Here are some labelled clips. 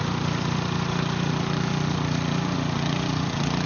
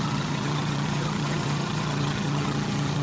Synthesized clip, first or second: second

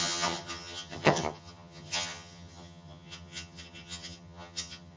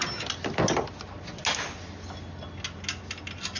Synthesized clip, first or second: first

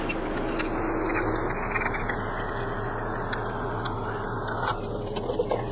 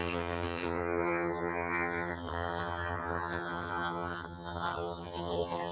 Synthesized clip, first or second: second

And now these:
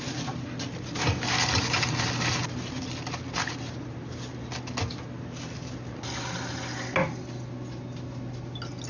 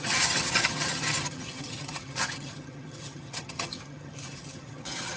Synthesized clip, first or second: second